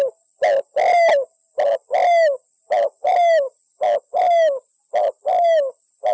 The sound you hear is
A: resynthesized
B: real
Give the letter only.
B